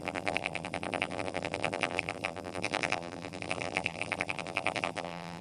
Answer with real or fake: fake